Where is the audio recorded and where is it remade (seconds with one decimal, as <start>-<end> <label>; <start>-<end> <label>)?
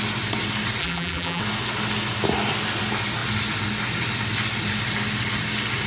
0.0-0.8 recorded; 0.8-1.4 remade; 1.4-5.9 recorded